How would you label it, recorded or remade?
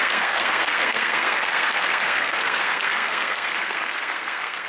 remade